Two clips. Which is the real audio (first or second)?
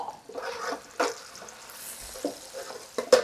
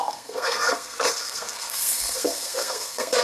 first